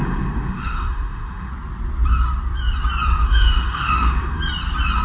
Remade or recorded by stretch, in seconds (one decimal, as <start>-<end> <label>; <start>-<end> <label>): 0.0-1.5 remade; 1.5-3.2 recorded; 3.2-4.4 remade; 4.4-5.0 recorded